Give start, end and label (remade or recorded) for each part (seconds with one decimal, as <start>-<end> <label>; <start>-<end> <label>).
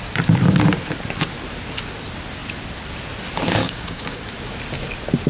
0.0-3.6 recorded; 3.6-4.2 remade; 4.2-5.3 recorded